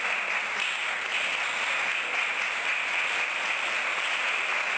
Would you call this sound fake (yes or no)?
no